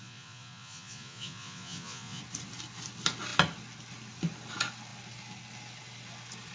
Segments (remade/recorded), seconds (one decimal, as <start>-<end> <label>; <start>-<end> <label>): 0.0-2.2 remade; 2.2-6.5 recorded